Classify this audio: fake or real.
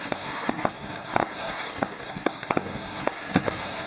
fake